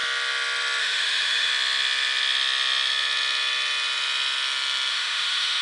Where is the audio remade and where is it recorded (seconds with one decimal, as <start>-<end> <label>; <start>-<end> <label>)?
0.0-0.8 recorded; 0.8-1.5 remade; 1.5-4.9 recorded; 4.9-5.6 remade